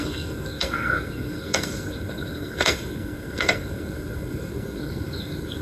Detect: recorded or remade remade